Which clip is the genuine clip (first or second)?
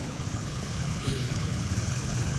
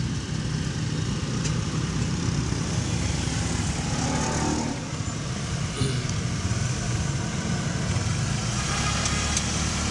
second